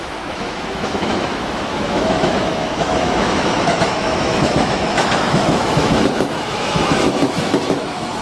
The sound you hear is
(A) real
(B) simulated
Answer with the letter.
B